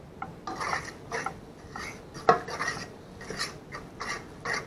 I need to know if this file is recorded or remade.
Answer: recorded